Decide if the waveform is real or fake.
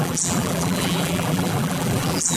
fake